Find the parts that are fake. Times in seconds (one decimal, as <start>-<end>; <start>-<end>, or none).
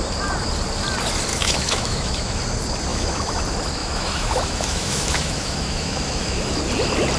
1.3-2.4; 2.9-3.4; 3.8-6.6